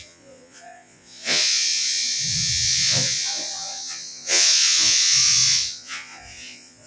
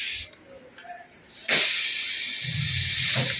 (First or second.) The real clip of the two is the second